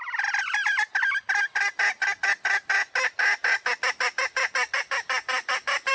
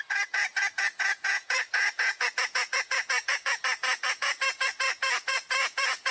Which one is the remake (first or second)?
second